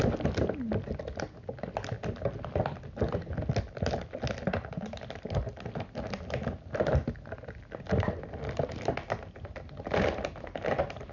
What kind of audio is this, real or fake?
real